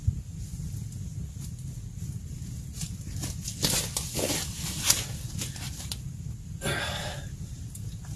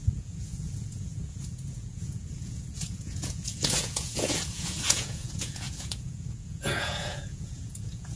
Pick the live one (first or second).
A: first